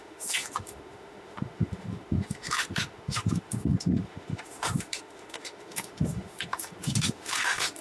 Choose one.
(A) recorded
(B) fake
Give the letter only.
B